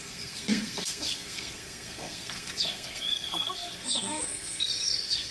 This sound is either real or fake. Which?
fake